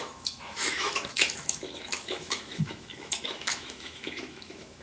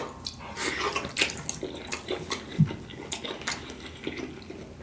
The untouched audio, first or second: second